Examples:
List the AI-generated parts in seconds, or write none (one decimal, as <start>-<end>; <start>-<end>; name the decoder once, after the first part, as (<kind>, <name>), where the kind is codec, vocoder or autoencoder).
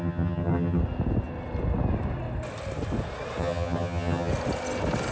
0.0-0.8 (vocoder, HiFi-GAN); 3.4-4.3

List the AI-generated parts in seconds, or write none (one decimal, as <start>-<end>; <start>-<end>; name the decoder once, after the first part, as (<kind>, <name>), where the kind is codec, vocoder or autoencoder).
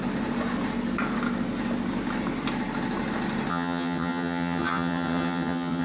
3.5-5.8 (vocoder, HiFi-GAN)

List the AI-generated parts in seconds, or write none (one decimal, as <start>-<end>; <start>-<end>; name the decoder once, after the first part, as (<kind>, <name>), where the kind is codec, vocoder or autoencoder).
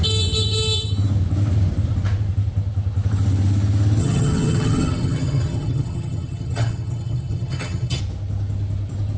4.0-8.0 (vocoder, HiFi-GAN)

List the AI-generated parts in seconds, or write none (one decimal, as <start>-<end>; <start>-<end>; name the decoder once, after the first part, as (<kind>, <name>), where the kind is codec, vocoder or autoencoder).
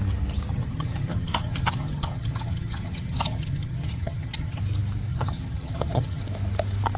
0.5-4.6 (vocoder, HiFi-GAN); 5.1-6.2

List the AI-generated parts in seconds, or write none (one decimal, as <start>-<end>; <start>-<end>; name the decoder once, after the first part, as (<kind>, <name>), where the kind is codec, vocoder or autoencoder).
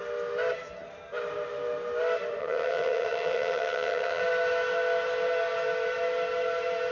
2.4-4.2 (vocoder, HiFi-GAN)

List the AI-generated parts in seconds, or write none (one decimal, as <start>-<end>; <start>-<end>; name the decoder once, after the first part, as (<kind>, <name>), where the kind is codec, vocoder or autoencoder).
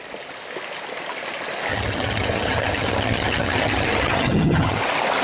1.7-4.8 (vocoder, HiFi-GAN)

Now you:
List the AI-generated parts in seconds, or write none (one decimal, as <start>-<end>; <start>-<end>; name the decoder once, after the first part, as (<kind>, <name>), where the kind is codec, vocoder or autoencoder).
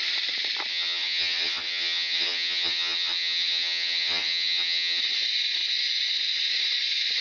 0.7-5.0 (vocoder, HiFi-GAN)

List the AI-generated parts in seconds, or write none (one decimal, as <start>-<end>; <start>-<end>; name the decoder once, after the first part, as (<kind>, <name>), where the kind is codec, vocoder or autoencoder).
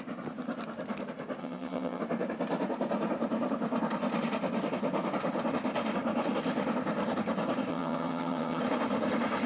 1.4-2.0 (vocoder, HiFi-GAN); 7.7-8.6